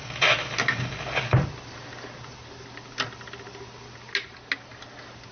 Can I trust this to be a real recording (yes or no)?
yes